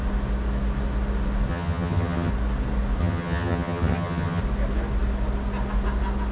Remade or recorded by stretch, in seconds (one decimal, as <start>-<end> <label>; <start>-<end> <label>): 0.0-1.5 recorded; 1.5-2.3 remade; 2.3-3.0 recorded; 3.0-4.4 remade; 4.4-6.3 recorded